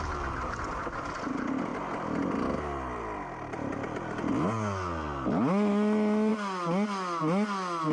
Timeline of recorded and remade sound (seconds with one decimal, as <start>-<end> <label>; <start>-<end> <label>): 0.0-1.7 recorded; 1.7-3.7 remade; 3.7-7.9 recorded